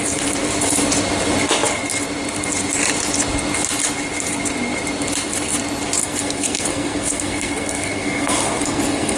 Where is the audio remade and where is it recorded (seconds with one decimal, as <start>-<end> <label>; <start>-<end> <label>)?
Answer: 0.0-6.0 recorded; 6.0-9.2 remade